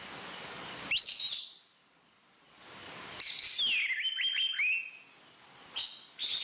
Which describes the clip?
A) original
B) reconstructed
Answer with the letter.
A